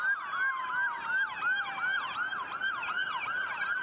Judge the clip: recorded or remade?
recorded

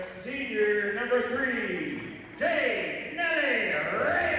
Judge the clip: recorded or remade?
recorded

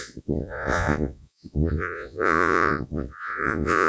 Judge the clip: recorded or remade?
remade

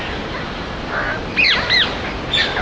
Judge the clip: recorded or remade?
recorded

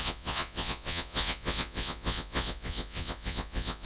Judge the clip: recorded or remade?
remade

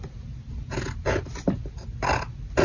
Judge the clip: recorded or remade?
recorded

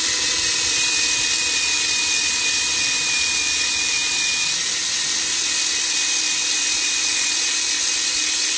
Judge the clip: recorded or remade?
recorded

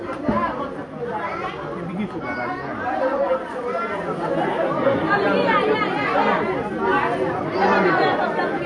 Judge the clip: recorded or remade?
recorded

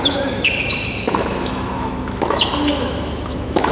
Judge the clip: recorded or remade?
remade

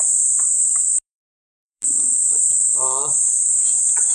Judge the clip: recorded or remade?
remade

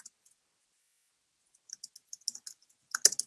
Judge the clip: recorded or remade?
recorded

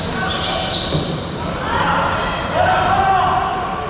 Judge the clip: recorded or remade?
recorded